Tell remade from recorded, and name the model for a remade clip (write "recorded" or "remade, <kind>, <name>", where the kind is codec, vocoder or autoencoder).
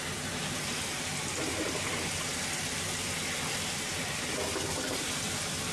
remade, vocoder, BigVGAN v2